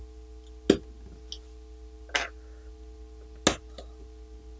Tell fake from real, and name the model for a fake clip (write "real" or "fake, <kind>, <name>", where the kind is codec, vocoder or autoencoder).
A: real